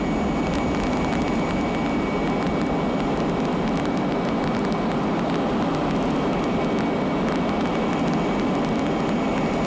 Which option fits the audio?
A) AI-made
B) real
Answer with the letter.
B